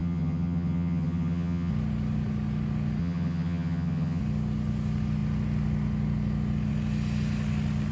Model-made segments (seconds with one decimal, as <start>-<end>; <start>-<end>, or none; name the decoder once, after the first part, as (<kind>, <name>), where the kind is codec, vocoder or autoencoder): 0.0-1.7 (vocoder, HiFi-GAN); 3.0-4.2